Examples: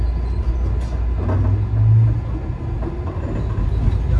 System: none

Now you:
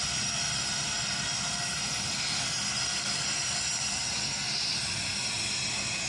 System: none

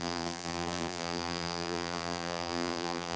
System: vocoder, BigVGAN v2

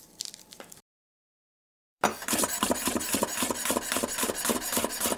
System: vocoder, BigVGAN v2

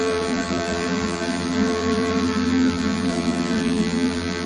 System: vocoder, BigVGAN v2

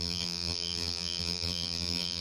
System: vocoder, BigVGAN v2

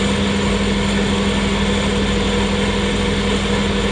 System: none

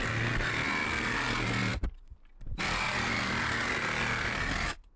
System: none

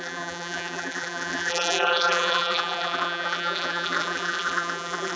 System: vocoder, BigVGAN v2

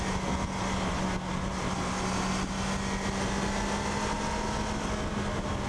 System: none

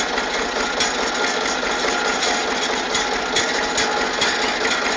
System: none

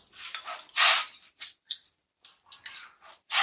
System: vocoder, BigVGAN v2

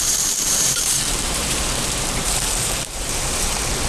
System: vocoder, BigVGAN v2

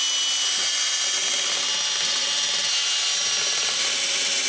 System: none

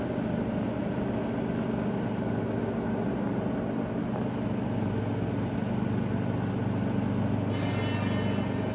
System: none